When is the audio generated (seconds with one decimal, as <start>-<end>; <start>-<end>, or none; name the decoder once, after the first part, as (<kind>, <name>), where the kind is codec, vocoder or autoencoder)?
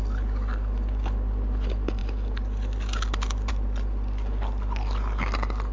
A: none